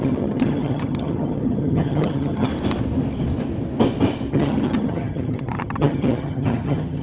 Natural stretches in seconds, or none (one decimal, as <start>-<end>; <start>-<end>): 2.5-4.3